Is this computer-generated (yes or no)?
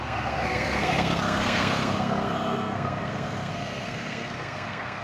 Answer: yes